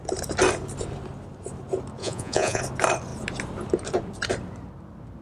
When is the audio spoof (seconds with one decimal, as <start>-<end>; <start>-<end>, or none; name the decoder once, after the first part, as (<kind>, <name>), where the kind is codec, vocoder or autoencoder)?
2.0-2.6 (vocoder, Vocos)